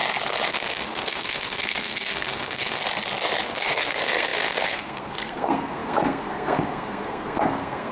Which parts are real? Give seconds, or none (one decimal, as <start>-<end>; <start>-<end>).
0.0-0.5; 2.8-3.4